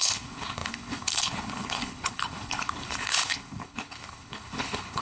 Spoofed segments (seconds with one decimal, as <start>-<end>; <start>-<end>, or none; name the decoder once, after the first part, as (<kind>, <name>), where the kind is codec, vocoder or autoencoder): 0.0-5.0 (codec, HILCodec)